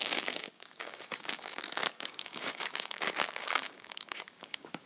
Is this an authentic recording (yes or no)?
no